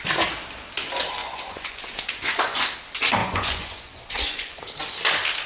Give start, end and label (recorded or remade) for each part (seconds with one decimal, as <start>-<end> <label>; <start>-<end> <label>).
0.0-1.2 recorded; 1.2-2.7 remade; 2.7-3.2 recorded; 3.2-4.6 remade; 4.6-5.5 recorded